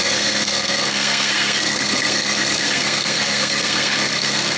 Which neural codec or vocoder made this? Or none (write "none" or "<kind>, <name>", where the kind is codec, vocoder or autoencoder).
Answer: codec, SNAC